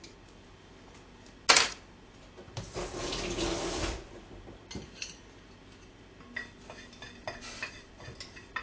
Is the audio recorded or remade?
recorded